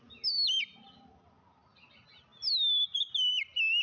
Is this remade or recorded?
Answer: recorded